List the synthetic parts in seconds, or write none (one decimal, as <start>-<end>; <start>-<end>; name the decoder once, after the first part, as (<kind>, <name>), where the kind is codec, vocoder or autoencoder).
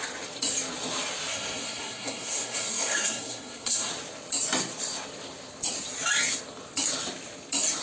1.3-3.9 (codec, SNAC)